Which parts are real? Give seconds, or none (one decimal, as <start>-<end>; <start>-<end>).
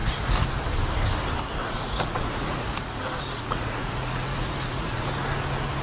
0.5-1.6; 5.1-5.8